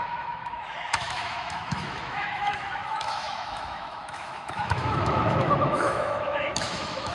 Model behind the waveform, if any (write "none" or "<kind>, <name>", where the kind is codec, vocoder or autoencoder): autoencoder, DAC-VAE